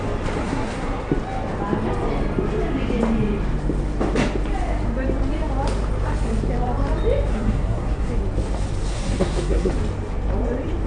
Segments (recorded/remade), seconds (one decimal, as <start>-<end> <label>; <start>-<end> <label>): 0.0-0.4 recorded; 0.4-1.1 remade; 1.1-7.3 recorded; 7.3-8.1 remade; 8.1-8.9 recorded; 8.9-9.7 remade; 9.7-10.9 recorded